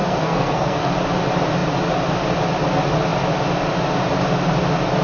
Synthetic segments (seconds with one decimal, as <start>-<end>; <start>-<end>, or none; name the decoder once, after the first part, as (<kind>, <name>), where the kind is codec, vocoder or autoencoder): 0.0-0.9 (codec, SNAC)